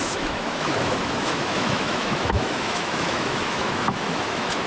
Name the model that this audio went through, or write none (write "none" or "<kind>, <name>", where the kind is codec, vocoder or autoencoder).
autoencoder, DAC-VAE